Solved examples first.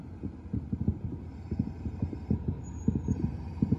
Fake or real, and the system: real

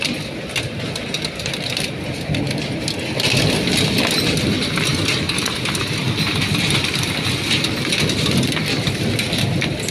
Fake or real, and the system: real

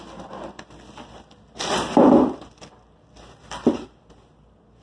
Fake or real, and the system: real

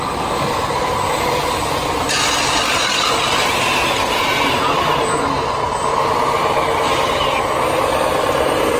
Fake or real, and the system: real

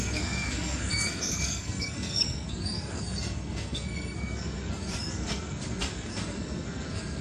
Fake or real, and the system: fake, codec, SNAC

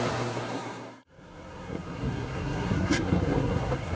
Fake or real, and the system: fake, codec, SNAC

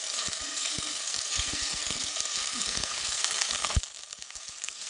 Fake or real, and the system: fake, codec, SNAC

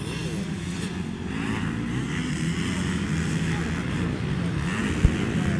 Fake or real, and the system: real